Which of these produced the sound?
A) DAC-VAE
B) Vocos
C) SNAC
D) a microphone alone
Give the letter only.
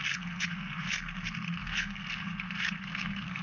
C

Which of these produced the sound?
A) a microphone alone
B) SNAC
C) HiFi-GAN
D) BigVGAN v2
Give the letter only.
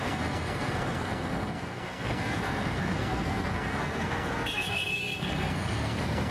B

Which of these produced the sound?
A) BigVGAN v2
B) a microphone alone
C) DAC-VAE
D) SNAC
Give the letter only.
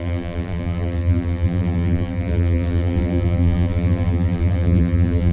A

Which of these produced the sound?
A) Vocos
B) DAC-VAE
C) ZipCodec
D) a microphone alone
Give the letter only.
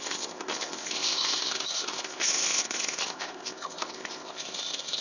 C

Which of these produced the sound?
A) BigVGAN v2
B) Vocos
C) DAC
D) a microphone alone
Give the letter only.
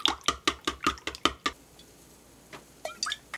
D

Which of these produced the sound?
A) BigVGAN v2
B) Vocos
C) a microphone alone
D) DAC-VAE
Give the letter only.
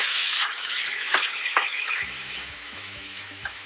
D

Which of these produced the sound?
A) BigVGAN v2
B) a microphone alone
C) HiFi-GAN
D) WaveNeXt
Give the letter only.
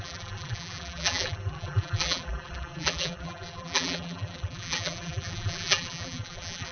A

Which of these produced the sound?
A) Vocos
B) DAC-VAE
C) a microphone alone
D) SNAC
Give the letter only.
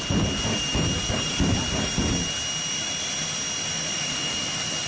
C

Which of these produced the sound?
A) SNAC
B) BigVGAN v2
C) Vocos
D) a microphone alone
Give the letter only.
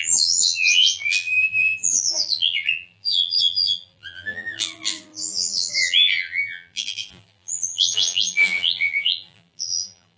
B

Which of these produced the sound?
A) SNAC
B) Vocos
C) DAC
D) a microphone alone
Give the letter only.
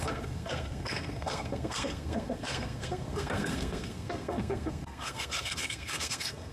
A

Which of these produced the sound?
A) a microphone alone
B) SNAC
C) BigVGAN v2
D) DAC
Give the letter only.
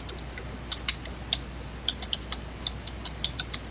A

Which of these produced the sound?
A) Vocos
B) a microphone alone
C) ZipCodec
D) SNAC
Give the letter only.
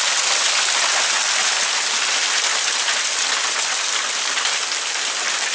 B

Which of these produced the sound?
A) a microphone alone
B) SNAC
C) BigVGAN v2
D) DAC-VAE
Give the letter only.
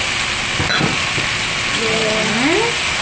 A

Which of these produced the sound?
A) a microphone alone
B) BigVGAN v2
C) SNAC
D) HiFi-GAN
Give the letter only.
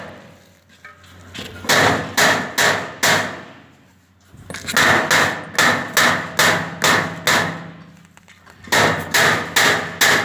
A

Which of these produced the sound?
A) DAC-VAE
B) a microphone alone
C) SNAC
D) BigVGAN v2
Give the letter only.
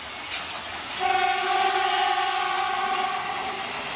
B